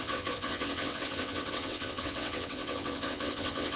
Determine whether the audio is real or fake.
fake